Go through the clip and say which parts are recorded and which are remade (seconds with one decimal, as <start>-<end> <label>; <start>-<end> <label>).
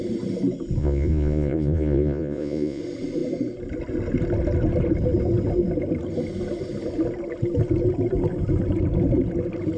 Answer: 0.0-0.8 recorded; 0.8-2.8 remade; 2.8-9.8 recorded